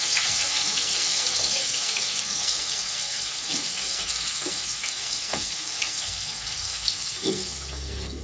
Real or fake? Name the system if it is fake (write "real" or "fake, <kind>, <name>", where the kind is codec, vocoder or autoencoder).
fake, codec, SNAC